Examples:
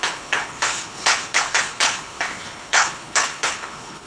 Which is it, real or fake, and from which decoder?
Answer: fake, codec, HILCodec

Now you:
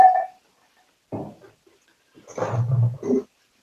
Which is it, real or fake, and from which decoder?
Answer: real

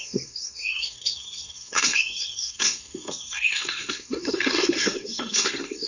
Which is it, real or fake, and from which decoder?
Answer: fake, codec, SNAC